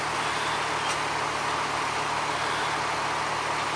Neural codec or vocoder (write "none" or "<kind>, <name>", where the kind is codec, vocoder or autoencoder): none